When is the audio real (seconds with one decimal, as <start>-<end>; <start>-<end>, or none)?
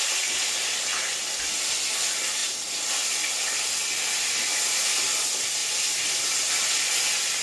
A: 0.0-7.4